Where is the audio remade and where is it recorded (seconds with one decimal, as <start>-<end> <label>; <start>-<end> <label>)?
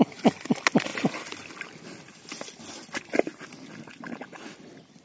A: 0.0-5.0 recorded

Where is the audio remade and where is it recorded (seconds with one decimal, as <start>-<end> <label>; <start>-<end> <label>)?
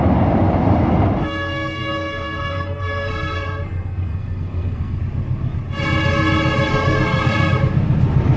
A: 0.0-1.2 recorded; 1.2-5.0 remade; 5.0-6.7 recorded; 6.7-7.6 remade; 7.6-8.4 recorded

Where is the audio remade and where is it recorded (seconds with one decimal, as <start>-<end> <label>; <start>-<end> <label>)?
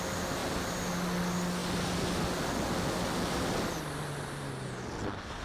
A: 0.0-5.4 recorded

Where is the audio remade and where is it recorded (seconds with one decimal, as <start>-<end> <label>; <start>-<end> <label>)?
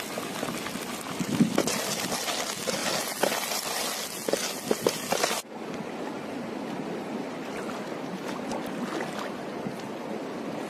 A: 0.0-10.7 recorded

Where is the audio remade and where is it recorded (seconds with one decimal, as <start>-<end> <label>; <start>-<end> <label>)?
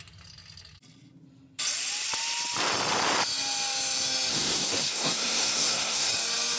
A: 0.0-4.3 recorded; 4.3-6.1 remade; 6.1-6.6 recorded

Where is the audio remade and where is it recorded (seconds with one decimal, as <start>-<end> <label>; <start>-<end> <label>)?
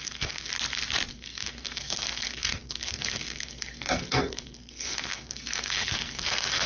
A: 0.0-0.5 remade; 0.5-1.1 recorded; 1.1-6.7 remade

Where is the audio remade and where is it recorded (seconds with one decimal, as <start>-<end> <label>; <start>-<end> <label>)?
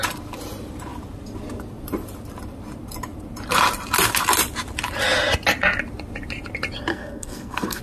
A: 0.0-6.9 recorded; 6.9-7.8 remade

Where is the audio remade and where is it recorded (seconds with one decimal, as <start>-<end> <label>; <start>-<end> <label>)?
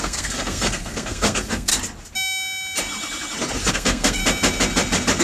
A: 0.0-1.7 remade; 1.7-3.7 recorded; 3.7-4.2 remade; 4.2-5.2 recorded